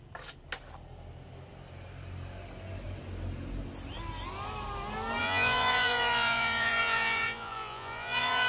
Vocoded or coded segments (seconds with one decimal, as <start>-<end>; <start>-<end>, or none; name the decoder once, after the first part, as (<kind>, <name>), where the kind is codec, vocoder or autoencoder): 5.2-8.5 (vocoder, Vocos)